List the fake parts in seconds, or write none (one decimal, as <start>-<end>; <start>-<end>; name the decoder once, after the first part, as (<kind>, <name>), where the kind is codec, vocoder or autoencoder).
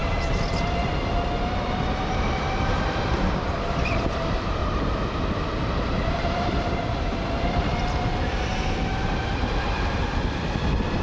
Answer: 0.0-4.6 (vocoder, BigVGAN v2); 5.6-8.5; 9.1-11.0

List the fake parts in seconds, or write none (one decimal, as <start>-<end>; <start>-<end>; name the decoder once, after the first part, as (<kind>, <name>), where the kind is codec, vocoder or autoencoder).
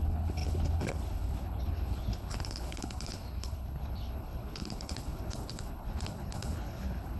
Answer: 0.0-7.2 (codec, HILCodec)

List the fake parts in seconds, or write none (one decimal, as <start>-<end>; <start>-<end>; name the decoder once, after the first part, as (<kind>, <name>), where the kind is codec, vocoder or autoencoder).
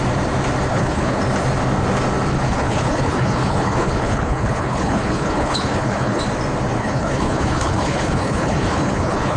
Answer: 0.7-1.2 (codec, HILCodec); 2.3-6.2; 6.8-9.4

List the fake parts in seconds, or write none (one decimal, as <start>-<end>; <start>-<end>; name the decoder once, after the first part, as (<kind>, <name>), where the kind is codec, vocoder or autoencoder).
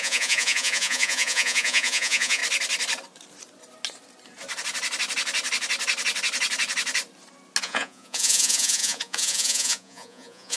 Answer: 0.0-2.4 (vocoder, Vocos); 7.6-10.6